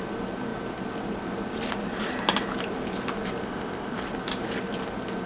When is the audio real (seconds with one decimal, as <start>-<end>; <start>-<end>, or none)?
0.0-3.4; 4.0-5.3